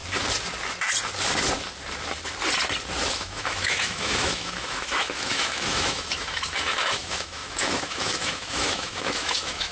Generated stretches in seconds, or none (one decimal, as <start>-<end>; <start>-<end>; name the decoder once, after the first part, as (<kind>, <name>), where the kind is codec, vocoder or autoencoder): 3.1-9.7 (autoencoder, DAC-VAE)